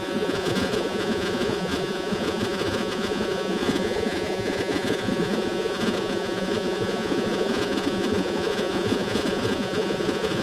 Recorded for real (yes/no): no